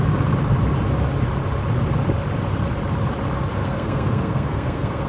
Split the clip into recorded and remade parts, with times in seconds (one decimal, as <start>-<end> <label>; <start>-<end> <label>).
0.0-3.6 recorded; 3.6-5.1 remade